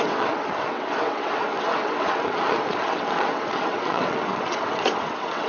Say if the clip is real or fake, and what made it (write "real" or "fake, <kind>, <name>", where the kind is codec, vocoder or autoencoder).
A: fake, vocoder, WaveNeXt